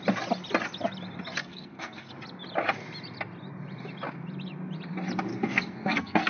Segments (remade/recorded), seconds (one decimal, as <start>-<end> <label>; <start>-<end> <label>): 0.0-1.4 recorded; 1.4-2.1 remade; 2.1-5.3 recorded; 5.3-6.3 remade